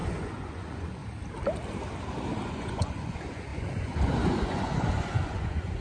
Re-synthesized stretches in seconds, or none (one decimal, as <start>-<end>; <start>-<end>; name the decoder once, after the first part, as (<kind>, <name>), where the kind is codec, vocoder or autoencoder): 0.0-1.0 (vocoder, Vocos); 2.5-5.8